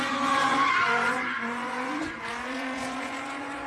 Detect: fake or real fake